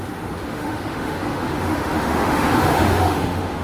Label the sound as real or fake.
fake